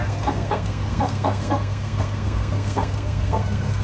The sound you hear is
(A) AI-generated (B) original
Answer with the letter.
A